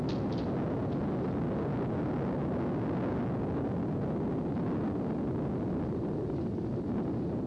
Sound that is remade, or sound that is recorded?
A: recorded